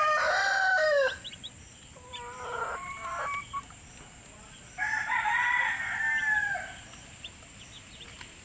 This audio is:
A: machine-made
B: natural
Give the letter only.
B